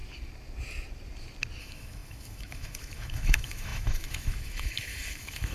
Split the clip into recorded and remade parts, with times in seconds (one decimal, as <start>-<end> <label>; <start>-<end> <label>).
0.0-1.6 recorded; 1.6-5.5 remade